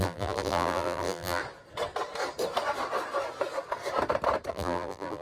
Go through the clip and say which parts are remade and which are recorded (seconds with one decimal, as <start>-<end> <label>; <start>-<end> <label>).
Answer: 0.0-1.4 remade; 1.4-4.5 recorded; 4.5-5.2 remade

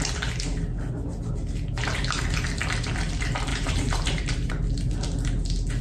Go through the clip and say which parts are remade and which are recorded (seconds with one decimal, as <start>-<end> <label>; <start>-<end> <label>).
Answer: 0.0-3.5 recorded; 3.5-4.5 remade; 4.5-5.8 recorded

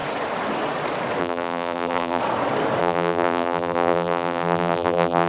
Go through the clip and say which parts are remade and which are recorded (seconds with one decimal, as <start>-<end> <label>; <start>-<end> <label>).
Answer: 0.0-1.2 recorded; 1.2-2.2 remade; 2.2-2.8 recorded; 2.8-5.3 remade